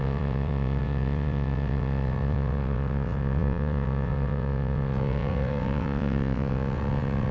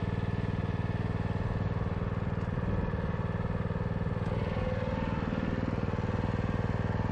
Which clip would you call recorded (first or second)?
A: second